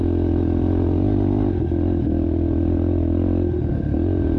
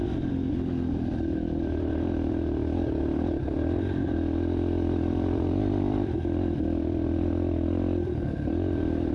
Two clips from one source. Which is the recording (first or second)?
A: first